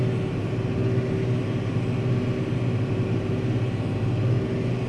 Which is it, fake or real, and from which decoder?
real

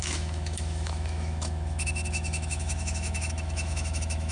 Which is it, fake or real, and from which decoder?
fake, autoencoder, DAC-VAE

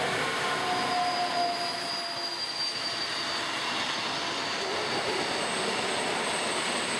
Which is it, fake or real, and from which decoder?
real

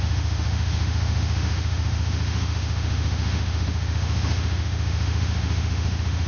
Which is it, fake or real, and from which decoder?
fake, autoencoder, DAC-VAE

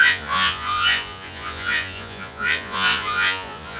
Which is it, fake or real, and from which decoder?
fake, vocoder, Vocos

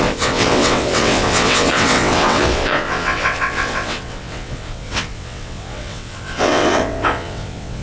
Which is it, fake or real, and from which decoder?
fake, vocoder, WaveNeXt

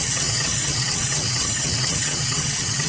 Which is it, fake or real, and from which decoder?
fake, vocoder, WaveNeXt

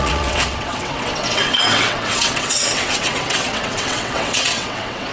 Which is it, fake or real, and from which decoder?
fake, vocoder, WaveNeXt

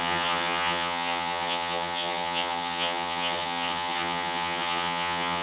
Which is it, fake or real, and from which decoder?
fake, vocoder, HiFi-GAN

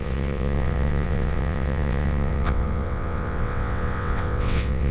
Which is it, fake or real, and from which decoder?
fake, vocoder, WaveNeXt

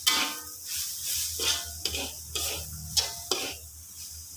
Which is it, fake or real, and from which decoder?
real